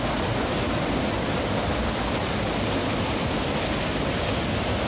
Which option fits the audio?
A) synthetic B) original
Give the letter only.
B